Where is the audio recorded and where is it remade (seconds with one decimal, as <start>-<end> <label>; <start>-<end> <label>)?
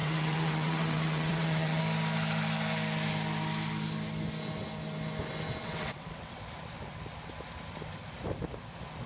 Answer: 0.0-1.8 remade; 1.8-5.6 recorded; 5.6-6.4 remade; 6.4-9.1 recorded